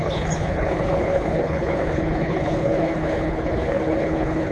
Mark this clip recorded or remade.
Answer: remade